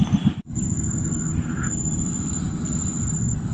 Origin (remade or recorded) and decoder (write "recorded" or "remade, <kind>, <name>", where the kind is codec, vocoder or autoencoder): recorded